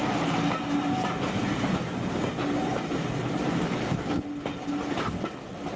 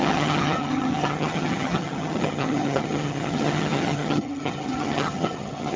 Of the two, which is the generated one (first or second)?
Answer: second